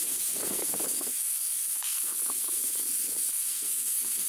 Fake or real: fake